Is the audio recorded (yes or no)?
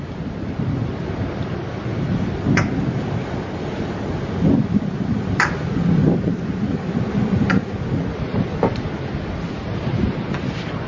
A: yes